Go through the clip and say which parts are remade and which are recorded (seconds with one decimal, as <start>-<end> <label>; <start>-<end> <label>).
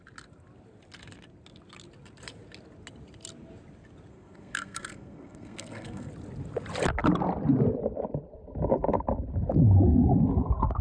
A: 0.0-4.1 recorded; 4.1-6.1 remade; 6.1-10.8 recorded